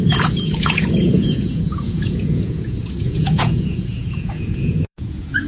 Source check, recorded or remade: remade